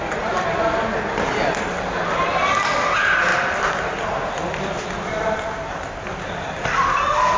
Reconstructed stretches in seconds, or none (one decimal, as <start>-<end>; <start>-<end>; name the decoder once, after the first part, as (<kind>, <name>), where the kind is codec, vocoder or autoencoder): 3.3-6.2 (vocoder, BigVGAN v2)